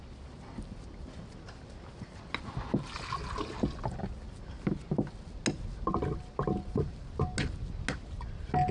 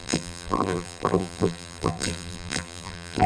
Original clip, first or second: first